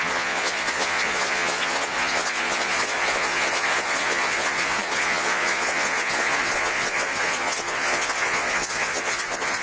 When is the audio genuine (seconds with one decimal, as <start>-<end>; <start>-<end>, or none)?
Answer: none